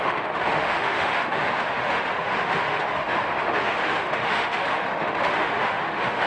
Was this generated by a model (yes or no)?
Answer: yes